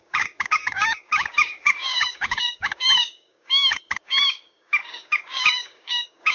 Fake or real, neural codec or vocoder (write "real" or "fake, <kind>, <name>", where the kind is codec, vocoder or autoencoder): fake, codec, DAC